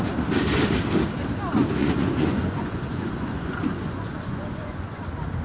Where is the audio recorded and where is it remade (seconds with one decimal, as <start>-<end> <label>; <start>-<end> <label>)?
0.0-1.8 recorded; 1.8-5.0 remade; 5.0-5.4 recorded